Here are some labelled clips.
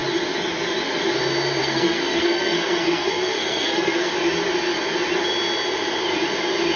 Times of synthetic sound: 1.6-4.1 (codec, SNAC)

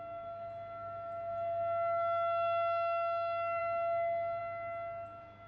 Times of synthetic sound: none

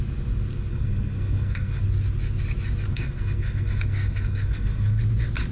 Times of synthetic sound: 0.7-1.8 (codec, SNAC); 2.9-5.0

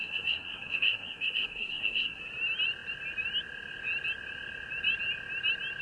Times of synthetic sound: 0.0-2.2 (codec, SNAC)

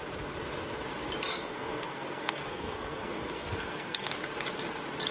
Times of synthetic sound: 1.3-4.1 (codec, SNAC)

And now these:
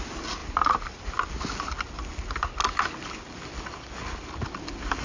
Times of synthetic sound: none

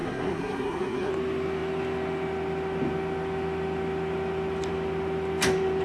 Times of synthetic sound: 0.0-1.1 (codec, SNAC)